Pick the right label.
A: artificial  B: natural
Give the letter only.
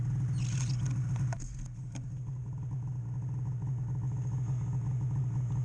B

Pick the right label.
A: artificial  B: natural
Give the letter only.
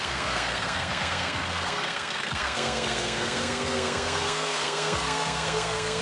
A